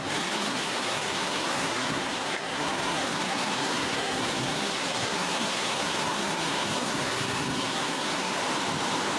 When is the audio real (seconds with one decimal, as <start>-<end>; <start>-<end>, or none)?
8.4-9.2